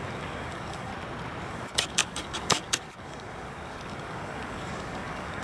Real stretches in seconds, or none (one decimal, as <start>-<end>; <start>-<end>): 0.9-1.5